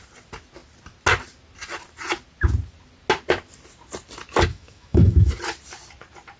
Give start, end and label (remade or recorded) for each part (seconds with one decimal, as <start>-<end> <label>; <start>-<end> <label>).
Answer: 0.0-4.5 recorded; 4.5-5.3 remade; 5.3-6.4 recorded